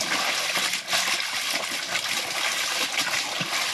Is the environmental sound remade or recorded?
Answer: recorded